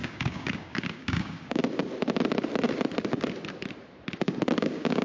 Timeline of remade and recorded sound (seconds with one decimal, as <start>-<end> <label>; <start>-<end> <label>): 0.0-1.6 remade; 1.6-4.6 recorded; 4.6-5.0 remade